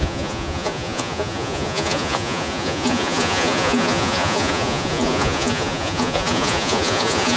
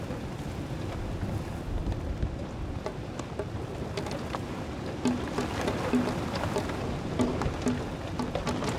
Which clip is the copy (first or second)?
first